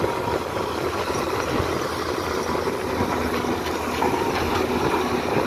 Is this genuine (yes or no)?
yes